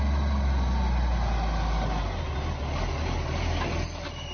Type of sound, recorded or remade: recorded